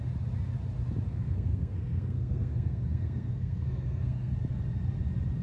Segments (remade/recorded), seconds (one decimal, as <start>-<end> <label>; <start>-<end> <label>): 0.0-1.1 recorded; 1.1-4.3 remade; 4.3-5.4 recorded